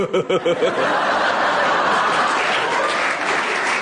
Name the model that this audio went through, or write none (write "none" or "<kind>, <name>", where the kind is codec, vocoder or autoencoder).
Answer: none